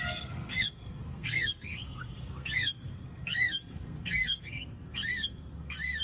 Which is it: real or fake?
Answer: fake